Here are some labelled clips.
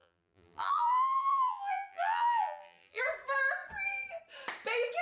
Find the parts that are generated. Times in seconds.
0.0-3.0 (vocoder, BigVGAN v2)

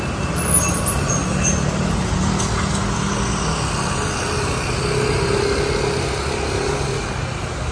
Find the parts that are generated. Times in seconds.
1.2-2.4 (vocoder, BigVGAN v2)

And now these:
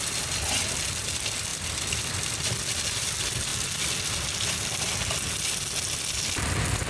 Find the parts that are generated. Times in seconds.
none

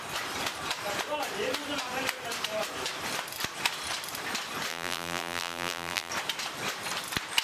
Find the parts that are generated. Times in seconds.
4.7-6.1 (vocoder, BigVGAN v2)